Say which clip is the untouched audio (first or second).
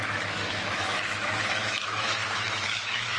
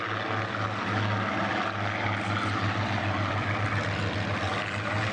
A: second